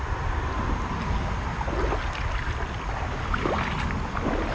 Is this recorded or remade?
recorded